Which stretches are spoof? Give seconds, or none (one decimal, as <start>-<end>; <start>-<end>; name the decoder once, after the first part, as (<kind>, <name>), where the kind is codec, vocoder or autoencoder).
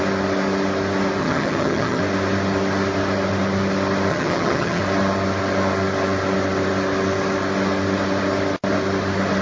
1.2-2.0 (vocoder, HiFi-GAN); 4.1-4.8